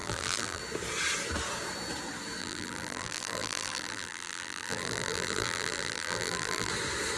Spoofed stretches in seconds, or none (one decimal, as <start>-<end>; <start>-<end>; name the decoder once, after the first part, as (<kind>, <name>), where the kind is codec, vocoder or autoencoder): 0.0-0.6 (vocoder, BigVGAN v2); 2.4-6.7